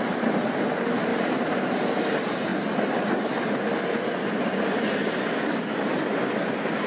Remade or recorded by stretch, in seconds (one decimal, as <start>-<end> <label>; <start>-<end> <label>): 0.0-6.9 recorded